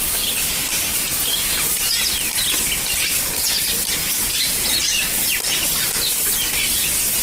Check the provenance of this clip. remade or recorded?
recorded